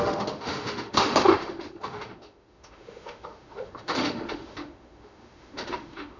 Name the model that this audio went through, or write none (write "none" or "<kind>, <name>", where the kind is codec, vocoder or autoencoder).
autoencoder, DAC-VAE